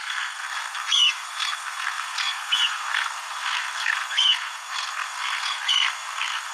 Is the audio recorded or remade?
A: remade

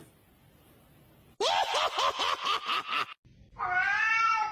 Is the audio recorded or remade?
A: recorded